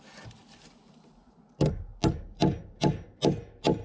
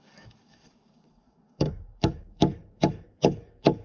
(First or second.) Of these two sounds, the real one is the first